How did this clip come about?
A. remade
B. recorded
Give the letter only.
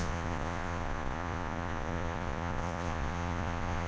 A